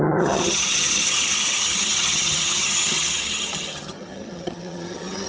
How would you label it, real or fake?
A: fake